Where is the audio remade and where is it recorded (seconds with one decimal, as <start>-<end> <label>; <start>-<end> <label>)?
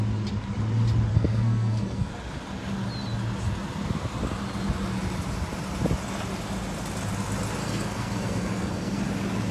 0.0-1.1 recorded; 1.1-2.1 remade; 2.1-7.6 recorded; 7.6-9.0 remade; 9.0-9.5 recorded